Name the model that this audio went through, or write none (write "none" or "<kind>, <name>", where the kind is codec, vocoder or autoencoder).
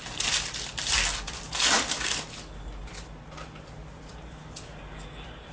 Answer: none